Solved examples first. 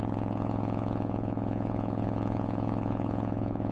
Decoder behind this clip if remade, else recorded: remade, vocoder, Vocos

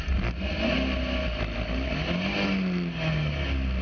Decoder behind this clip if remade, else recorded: recorded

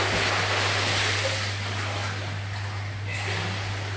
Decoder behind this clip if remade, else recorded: recorded